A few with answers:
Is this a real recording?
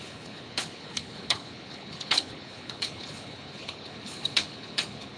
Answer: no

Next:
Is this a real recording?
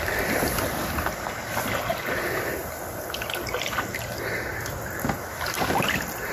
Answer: yes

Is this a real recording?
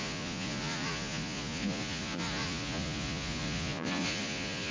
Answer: no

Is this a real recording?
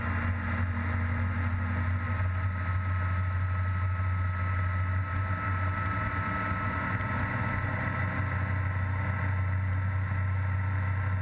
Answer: yes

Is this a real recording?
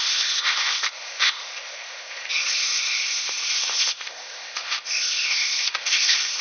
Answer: no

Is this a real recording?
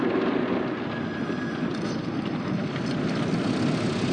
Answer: yes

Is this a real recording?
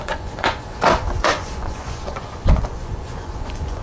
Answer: no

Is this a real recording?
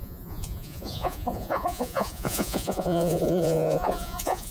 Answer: no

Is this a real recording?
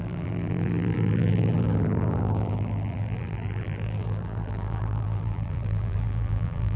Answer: no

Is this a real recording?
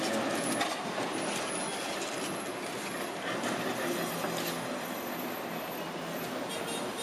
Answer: yes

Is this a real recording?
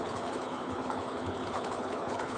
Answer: no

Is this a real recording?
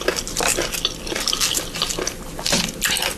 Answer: yes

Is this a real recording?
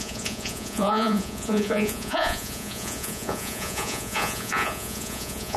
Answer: no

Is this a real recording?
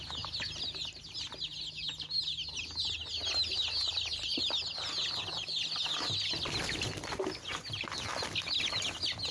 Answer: yes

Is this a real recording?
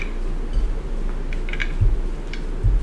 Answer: yes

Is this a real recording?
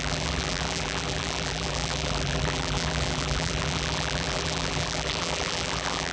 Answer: no